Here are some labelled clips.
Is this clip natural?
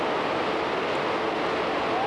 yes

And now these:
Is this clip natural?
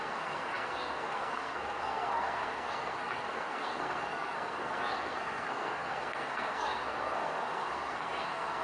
no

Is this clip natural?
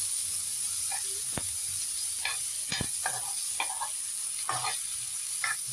yes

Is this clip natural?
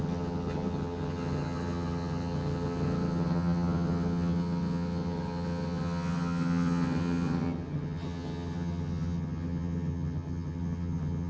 no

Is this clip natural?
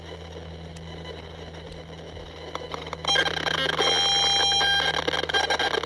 yes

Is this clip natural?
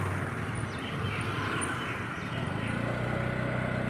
yes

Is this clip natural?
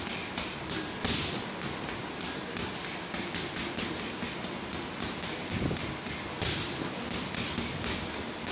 yes